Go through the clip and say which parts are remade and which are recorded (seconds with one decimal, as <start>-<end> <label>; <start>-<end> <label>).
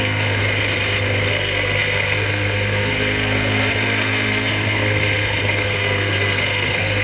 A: 0.0-0.4 remade; 0.4-1.3 recorded; 1.3-7.0 remade